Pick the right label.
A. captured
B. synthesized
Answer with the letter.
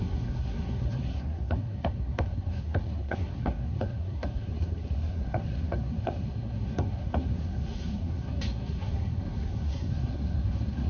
B